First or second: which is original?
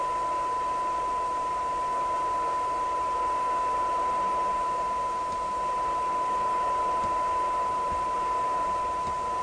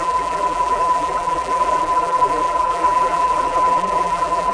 first